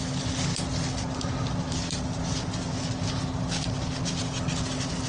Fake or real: real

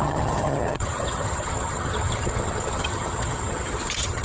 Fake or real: fake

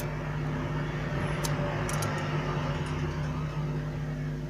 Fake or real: real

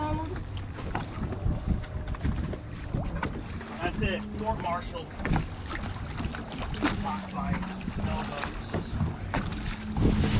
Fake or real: real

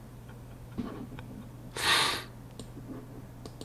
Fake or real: real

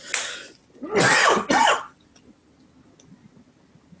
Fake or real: real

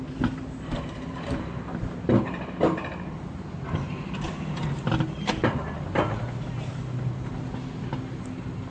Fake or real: real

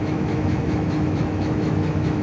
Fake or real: fake